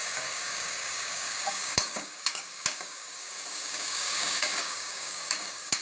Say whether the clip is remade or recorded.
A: remade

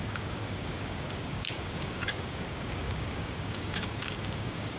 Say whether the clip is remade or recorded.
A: remade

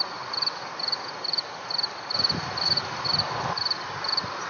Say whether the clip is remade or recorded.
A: recorded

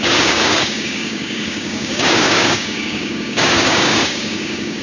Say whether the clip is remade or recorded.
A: remade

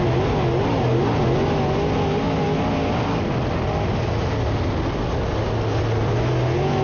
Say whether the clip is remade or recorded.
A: recorded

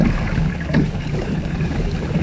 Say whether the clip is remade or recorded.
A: remade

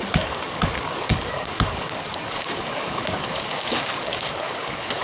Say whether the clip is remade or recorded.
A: remade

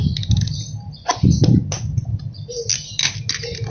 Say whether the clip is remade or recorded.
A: recorded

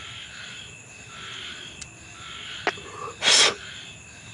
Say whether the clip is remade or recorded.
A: recorded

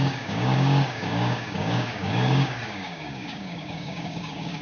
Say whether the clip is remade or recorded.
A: remade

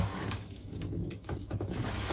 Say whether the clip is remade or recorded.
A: remade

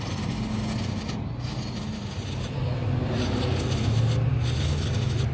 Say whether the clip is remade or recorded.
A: recorded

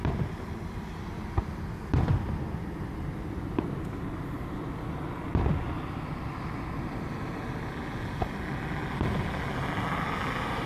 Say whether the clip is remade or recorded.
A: recorded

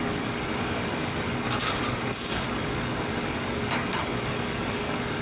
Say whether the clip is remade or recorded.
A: remade